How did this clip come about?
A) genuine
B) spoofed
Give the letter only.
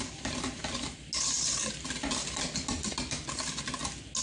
A